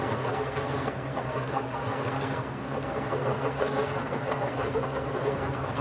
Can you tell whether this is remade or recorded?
remade